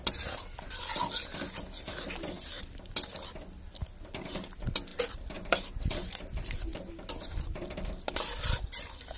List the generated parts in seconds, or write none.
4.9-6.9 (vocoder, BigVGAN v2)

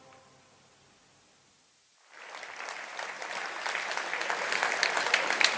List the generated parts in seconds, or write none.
none

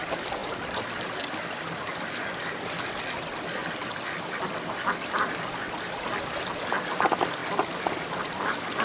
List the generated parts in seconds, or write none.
0.4-2.1 (vocoder, BigVGAN v2); 3.6-6.5

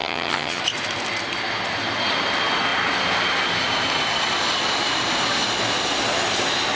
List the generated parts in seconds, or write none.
0.0-0.6 (vocoder, HiFi-GAN)

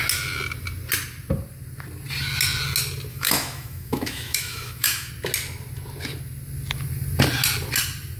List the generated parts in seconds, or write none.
3.1-5.1 (autoencoder, DAC-VAE)